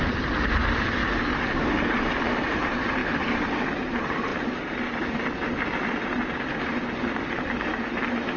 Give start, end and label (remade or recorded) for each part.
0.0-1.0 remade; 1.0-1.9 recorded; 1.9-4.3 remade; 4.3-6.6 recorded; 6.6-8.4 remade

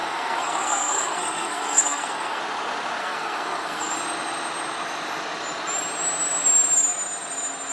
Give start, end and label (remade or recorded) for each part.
0.0-2.4 remade; 2.4-3.0 recorded; 3.0-3.9 remade; 3.9-7.7 recorded

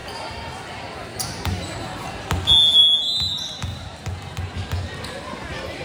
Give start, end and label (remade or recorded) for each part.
0.0-2.2 remade; 2.2-5.8 recorded

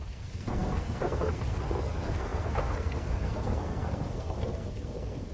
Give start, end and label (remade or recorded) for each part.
0.0-5.3 remade

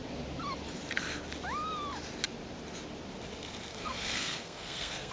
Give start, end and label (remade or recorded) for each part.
0.0-3.7 recorded; 3.7-5.1 remade